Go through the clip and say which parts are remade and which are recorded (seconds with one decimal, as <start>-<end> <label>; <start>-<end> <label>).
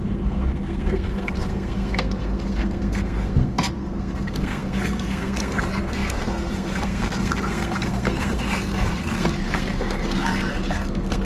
0.0-11.3 remade